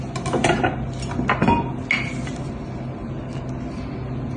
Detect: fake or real real